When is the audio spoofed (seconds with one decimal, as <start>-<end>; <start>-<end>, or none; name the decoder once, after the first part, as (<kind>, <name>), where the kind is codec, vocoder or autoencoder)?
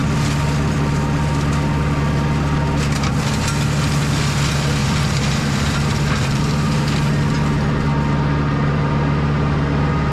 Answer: 4.8-6.4 (vocoder, BigVGAN v2)